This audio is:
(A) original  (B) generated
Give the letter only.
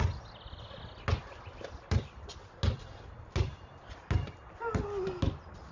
A